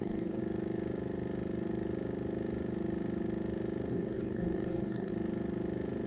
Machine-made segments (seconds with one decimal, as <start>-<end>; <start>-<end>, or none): 0.0-0.4; 3.9-5.1